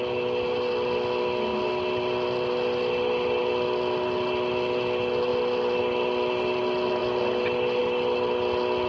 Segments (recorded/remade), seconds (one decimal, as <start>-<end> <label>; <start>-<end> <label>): 0.0-8.9 recorded